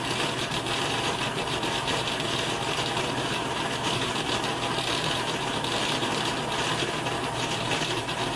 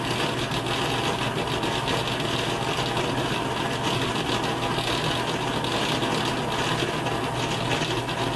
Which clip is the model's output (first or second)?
first